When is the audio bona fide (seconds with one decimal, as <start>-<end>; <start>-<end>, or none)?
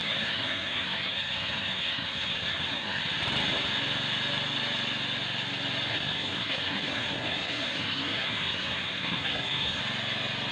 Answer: 3.0-5.9; 9.8-10.5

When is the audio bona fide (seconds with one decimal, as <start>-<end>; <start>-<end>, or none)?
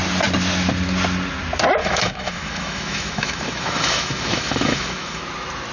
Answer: 0.0-1.8; 5.2-5.7